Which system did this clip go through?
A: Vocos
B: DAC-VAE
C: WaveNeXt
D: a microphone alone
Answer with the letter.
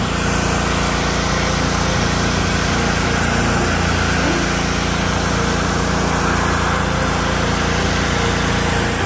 D